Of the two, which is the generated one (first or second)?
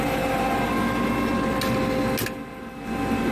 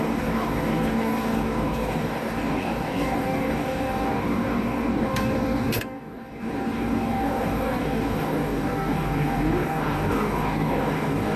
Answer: second